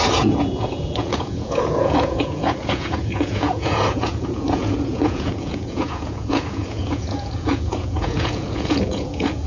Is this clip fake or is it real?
fake